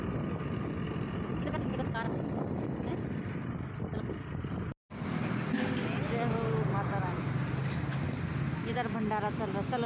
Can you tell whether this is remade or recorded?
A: recorded